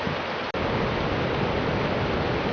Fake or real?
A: real